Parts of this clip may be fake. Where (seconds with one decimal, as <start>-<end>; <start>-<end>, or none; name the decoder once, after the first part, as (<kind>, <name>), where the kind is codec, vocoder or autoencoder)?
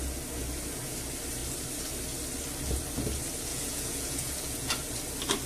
3.5-4.7 (vocoder, Vocos)